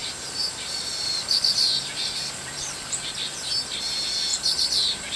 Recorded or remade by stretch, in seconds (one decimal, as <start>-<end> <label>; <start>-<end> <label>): 0.0-3.1 remade; 3.1-4.3 recorded; 4.3-5.2 remade